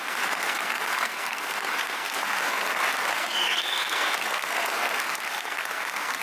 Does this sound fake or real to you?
fake